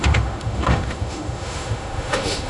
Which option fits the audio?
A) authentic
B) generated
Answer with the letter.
B